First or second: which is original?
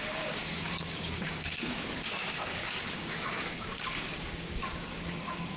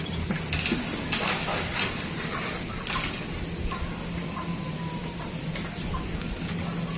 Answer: second